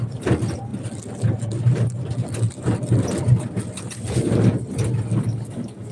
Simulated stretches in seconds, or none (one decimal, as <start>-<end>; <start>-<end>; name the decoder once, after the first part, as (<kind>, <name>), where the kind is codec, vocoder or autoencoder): 5.1-5.9 (codec, DAC)